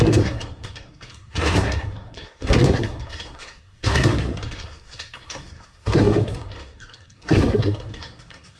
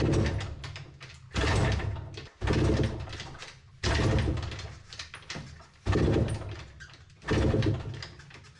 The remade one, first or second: first